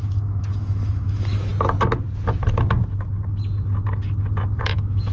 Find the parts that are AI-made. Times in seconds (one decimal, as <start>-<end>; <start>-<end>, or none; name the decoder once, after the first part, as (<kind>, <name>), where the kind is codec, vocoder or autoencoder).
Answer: 0.0-1.5 (autoencoder, DAC-VAE); 4.6-5.1